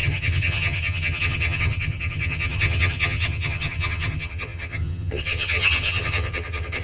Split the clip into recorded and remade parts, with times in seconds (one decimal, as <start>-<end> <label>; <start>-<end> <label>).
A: 0.0-6.8 remade